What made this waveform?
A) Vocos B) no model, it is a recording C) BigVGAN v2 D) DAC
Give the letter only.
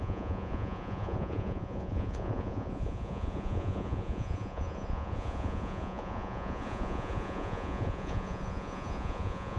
A